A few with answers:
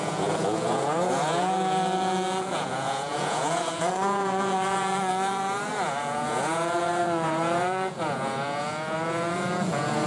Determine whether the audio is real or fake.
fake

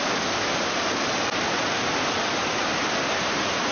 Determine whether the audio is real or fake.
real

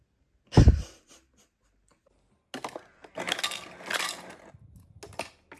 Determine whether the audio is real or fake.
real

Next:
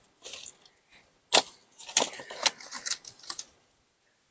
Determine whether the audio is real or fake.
real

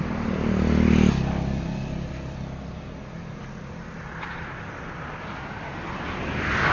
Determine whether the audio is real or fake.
real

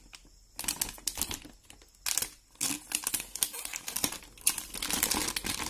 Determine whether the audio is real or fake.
real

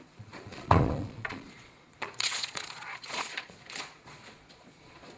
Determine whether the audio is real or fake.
fake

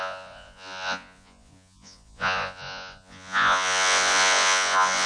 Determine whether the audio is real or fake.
fake